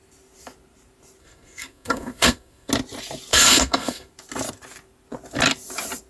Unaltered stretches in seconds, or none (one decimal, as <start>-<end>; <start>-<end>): 0.0-1.2; 2.7-3.3; 4.1-6.1